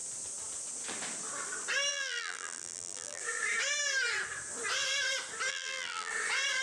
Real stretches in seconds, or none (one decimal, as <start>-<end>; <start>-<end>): 0.0-1.9; 3.2-5.5; 6.1-6.6